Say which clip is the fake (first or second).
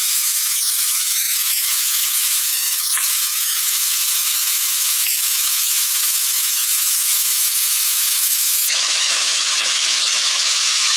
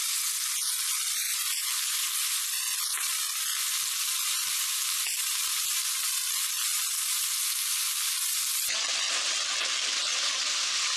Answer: first